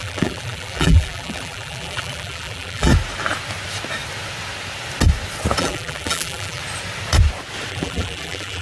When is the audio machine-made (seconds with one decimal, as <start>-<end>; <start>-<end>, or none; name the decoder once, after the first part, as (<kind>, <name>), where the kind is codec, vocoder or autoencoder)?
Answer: 0.0-2.9 (vocoder, BigVGAN v2); 5.6-6.6; 7.7-8.6